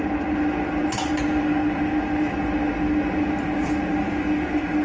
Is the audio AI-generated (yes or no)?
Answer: no